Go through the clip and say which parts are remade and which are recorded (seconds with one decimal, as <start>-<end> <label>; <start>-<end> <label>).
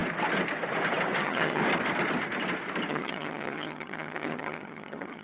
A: 0.0-1.2 recorded; 1.2-1.6 remade; 1.6-2.9 recorded; 2.9-5.2 remade